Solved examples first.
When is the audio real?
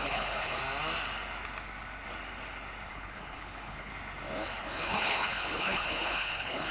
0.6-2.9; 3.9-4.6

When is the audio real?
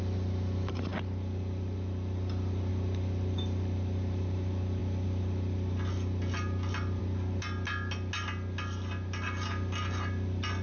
0.0-10.6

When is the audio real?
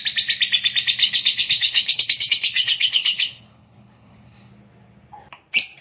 0.0-1.0; 4.5-5.8